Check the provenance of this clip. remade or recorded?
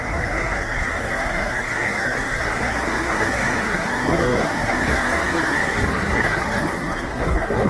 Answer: remade